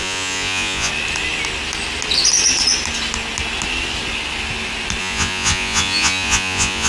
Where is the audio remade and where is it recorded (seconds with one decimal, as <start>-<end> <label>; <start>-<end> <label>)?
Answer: 0.0-0.9 remade; 0.9-5.0 recorded; 5.0-6.9 remade